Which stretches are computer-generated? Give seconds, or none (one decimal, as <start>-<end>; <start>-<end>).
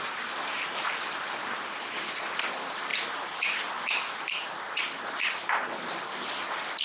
0.0-2.9; 4.1-6.8